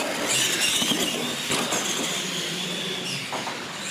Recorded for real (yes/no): yes